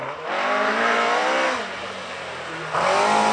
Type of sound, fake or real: real